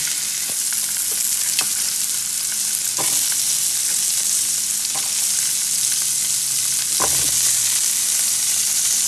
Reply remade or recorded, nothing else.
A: recorded